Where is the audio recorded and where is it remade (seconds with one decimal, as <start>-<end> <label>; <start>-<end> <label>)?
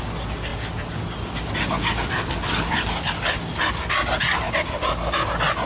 0.0-5.7 recorded